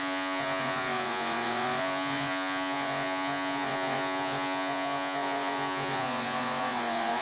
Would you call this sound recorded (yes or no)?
no